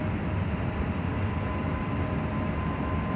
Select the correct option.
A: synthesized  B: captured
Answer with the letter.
B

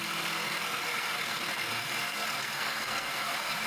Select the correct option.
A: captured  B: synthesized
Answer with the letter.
B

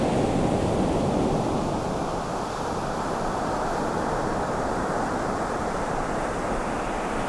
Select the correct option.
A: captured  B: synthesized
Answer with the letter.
B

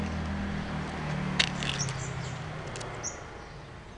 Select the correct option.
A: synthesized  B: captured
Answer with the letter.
B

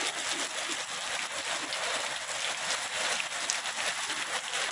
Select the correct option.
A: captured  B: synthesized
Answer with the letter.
A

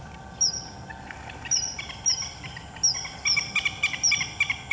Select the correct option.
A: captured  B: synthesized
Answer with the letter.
A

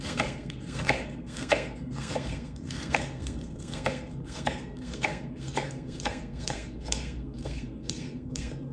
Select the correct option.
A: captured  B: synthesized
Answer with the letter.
B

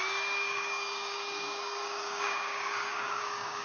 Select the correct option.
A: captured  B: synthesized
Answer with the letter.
B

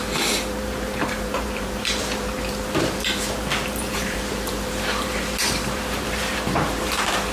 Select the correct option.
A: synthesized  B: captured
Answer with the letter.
A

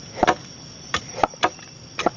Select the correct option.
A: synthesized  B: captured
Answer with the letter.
B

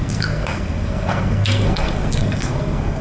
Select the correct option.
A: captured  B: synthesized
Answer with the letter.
B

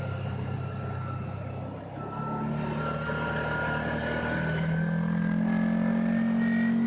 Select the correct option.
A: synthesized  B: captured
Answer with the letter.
B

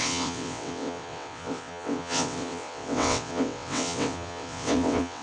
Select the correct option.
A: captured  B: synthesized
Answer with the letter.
B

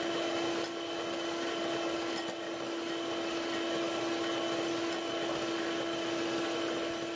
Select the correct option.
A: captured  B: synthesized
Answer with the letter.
A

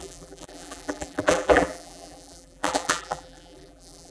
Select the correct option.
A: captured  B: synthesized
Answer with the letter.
B